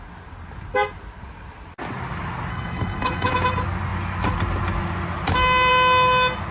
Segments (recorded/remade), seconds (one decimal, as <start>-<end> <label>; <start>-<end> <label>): 0.0-2.5 recorded; 2.5-3.3 remade; 3.3-6.5 recorded

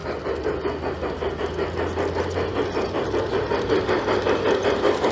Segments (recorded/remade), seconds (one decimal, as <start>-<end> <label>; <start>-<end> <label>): 0.0-5.1 recorded

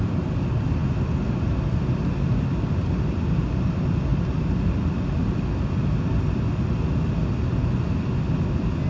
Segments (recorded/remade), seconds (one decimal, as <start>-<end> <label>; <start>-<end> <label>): 0.0-0.8 recorded; 0.8-1.4 remade; 1.4-4.1 recorded; 4.1-5.3 remade; 5.3-8.9 recorded

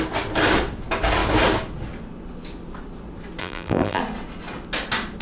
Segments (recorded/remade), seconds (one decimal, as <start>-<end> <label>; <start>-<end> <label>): 0.0-3.4 recorded; 3.4-4.0 remade; 4.0-5.2 recorded

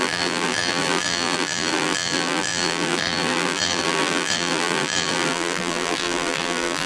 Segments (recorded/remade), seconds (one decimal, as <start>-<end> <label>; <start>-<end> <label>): 0.0-6.9 remade